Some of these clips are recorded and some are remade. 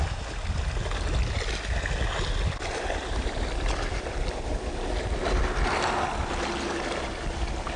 recorded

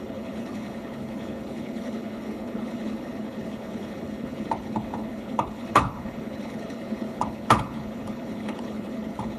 remade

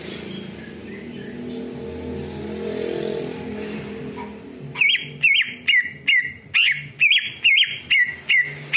recorded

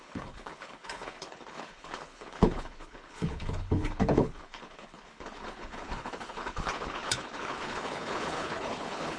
remade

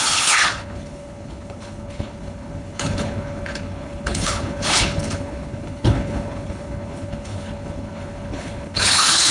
remade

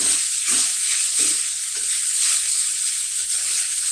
remade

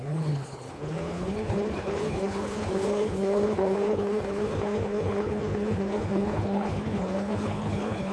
remade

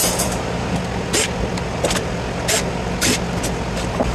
recorded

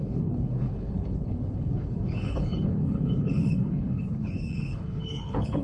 remade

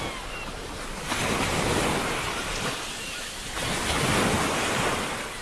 recorded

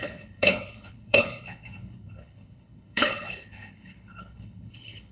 remade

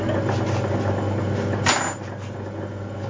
recorded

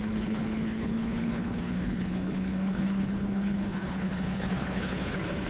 remade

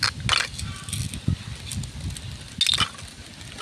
recorded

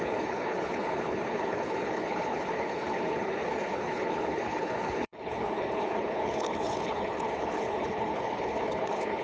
remade